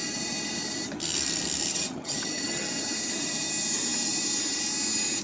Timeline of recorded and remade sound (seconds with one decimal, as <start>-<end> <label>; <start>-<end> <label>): 0.0-1.7 recorded; 1.7-2.7 remade; 2.7-5.2 recorded